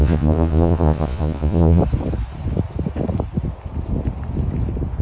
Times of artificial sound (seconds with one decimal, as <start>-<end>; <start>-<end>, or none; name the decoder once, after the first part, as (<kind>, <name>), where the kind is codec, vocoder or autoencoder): 0.0-1.8 (vocoder, Vocos)